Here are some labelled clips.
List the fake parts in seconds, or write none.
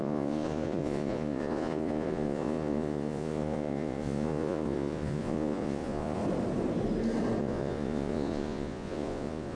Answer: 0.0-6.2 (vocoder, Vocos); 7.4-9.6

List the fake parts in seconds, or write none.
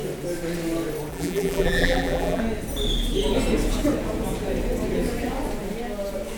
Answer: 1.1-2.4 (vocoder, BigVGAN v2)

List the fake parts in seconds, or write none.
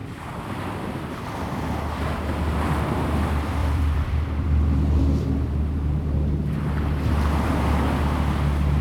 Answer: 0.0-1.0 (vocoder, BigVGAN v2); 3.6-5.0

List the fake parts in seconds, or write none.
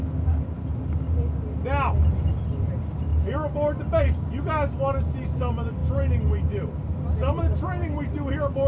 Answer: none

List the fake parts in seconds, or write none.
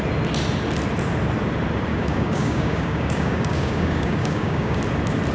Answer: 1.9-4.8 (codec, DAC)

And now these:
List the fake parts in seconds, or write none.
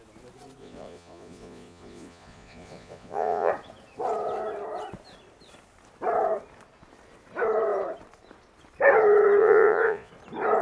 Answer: 0.6-3.5 (vocoder, Vocos); 9.4-10.1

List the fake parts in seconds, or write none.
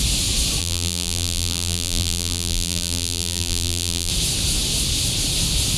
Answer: 0.6-4.1 (vocoder, BigVGAN v2)